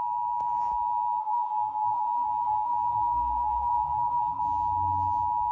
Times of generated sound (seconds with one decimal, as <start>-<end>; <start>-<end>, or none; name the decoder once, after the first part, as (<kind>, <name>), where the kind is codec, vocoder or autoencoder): 1.2-4.4 (codec, DAC)